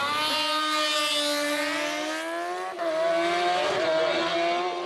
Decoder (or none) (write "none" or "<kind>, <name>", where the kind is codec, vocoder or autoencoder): none